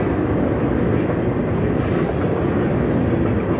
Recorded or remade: recorded